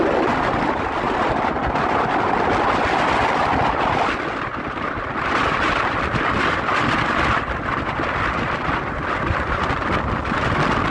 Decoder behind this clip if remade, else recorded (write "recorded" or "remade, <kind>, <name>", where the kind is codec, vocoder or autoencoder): recorded